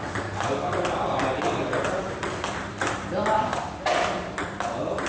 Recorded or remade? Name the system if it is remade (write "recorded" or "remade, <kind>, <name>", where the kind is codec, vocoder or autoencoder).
recorded